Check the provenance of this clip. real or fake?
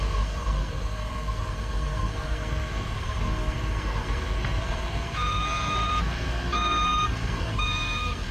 fake